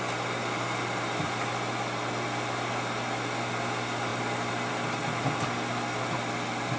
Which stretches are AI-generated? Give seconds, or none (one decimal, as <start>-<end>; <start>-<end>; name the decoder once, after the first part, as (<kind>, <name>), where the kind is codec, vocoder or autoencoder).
none

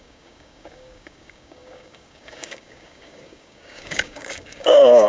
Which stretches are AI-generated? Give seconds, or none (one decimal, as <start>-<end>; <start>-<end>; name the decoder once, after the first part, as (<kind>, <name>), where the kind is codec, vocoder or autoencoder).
0.0-5.1 (codec, DAC)

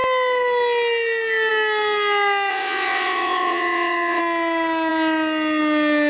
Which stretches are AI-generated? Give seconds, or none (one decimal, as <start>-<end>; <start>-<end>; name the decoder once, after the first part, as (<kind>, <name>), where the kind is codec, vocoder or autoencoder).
2.5-4.2 (vocoder, WaveNeXt)

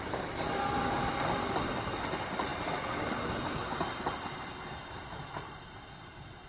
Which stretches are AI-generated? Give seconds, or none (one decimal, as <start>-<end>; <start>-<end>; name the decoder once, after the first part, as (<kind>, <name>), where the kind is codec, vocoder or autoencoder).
none